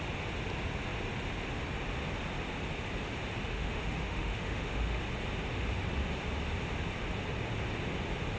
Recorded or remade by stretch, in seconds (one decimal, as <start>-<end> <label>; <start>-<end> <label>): 0.0-3.5 recorded; 3.5-5.0 remade; 5.0-8.4 recorded